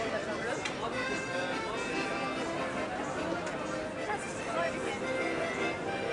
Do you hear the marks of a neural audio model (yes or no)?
no